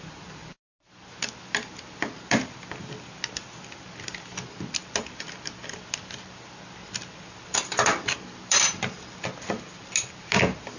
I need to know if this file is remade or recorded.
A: recorded